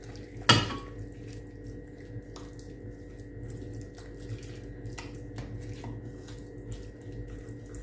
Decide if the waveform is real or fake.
real